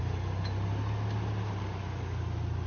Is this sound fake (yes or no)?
no